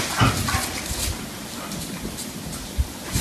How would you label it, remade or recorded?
recorded